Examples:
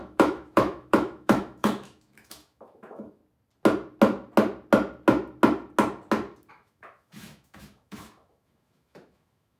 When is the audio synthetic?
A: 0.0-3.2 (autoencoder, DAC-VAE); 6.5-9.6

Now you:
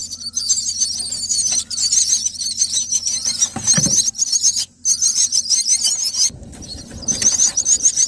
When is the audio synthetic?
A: none

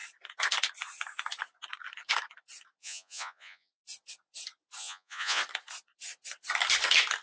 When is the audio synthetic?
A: 2.8-3.7 (vocoder, Vocos); 4.8-5.4

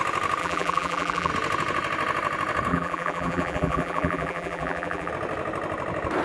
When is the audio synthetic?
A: 0.4-1.3 (vocoder, BigVGAN v2); 2.7-5.1

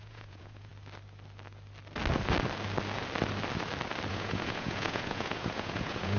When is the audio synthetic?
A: 0.0-0.7 (vocoder, Vocos); 4.1-6.2